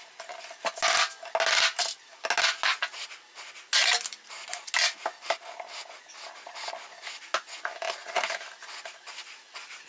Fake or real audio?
real